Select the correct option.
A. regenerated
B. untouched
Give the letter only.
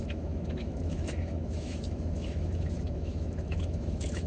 A